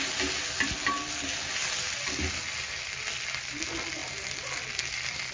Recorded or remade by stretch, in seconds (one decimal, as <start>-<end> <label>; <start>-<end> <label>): 0.0-5.3 recorded